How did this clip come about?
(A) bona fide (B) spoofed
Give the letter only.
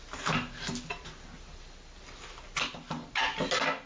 A